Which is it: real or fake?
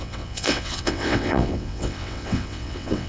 fake